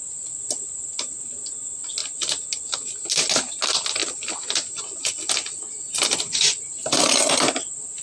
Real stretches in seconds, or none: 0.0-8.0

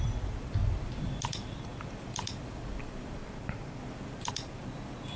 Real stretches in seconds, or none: 3.2-3.8

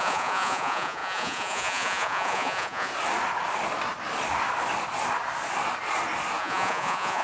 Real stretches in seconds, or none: 2.9-6.4

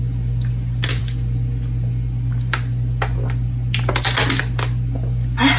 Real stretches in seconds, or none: 0.0-5.6

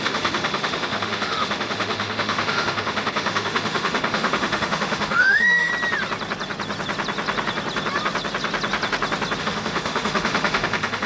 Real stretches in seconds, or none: 5.7-9.4